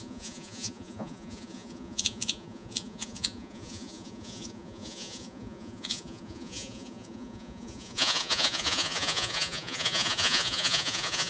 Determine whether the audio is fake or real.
fake